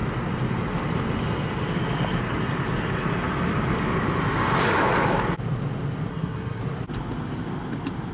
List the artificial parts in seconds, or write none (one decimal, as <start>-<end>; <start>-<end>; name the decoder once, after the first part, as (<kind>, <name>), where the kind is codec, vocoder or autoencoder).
6.1-6.6 (codec, SNAC)